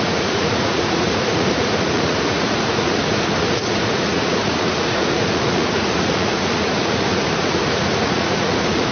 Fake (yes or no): yes